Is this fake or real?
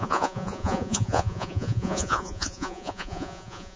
fake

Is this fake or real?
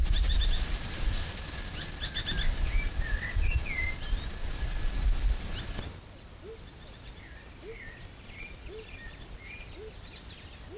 real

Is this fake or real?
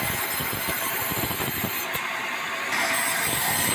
real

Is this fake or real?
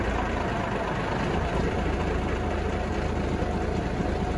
real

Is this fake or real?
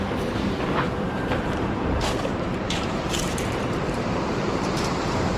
fake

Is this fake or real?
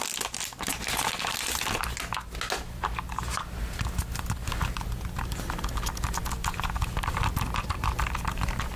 real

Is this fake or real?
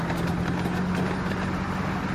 real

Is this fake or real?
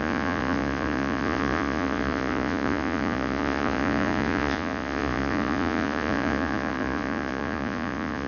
fake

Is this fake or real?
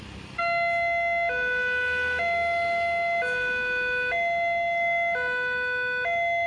real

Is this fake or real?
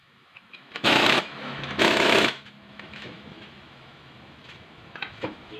fake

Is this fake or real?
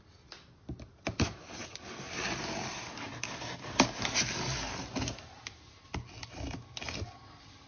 real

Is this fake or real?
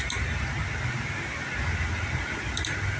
real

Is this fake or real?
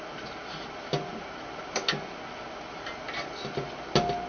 real